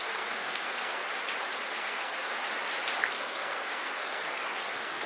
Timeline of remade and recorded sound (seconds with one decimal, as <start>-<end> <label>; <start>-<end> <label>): 0.0-1.0 remade; 1.0-1.7 recorded; 1.7-2.3 remade; 2.3-3.1 recorded; 3.1-5.1 remade